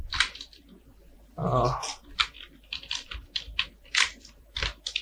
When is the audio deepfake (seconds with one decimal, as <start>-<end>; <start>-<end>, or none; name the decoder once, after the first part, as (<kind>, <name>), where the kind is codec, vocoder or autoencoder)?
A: 0.0-5.0 (vocoder, BigVGAN v2)